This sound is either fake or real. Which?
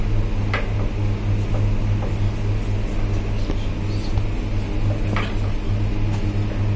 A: real